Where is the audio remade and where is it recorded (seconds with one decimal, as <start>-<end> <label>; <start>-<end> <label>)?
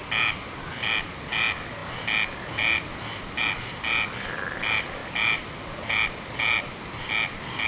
0.0-7.7 recorded